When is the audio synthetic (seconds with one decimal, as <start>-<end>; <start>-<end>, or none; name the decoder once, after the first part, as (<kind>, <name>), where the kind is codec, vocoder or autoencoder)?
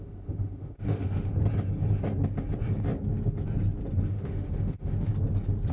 0.0-1.3 (autoencoder, DAC-VAE); 4.1-5.1